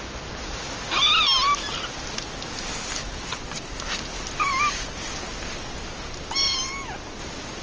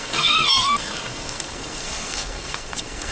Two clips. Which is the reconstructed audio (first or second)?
second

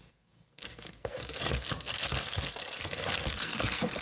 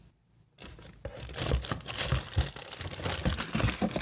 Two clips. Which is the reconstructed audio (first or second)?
first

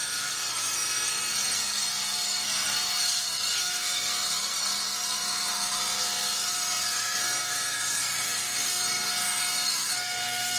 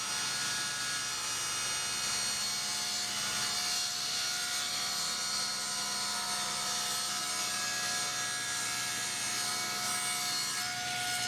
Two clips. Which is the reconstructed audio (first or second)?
first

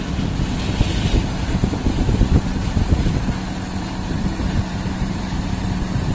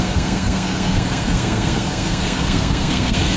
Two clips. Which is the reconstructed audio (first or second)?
second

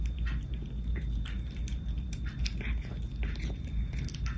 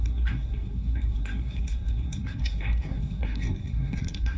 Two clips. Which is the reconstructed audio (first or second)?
second